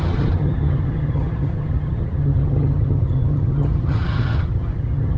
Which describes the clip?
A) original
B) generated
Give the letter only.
B